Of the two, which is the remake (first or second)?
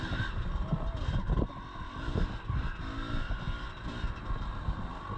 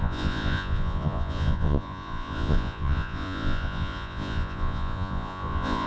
second